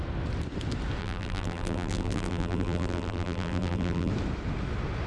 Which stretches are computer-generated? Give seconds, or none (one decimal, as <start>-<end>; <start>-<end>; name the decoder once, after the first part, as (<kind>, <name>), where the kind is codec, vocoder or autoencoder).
1.0-4.1 (vocoder, BigVGAN v2)